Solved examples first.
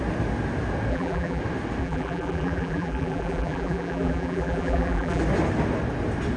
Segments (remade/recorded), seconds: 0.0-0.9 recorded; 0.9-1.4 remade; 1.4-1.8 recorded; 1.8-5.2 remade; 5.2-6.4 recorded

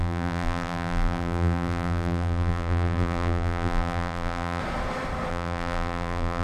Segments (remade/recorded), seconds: 0.0-4.6 remade; 4.6-5.3 recorded; 5.3-6.4 remade

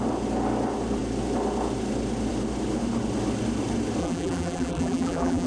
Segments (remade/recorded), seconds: 0.0-4.0 recorded; 4.0-5.5 remade

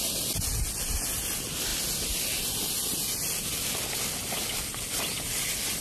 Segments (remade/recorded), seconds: 0.0-5.8 recorded

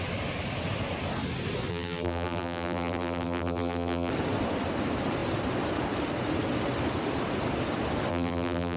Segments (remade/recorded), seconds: 0.0-1.7 recorded; 1.7-4.1 remade; 4.1-8.1 recorded; 8.1-8.8 remade